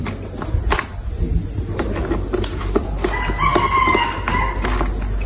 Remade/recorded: recorded